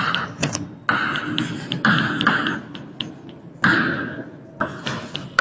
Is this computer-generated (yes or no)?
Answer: no